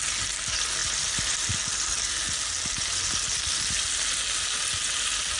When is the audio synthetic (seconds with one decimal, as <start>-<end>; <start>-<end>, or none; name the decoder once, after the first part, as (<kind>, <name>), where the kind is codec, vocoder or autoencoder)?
none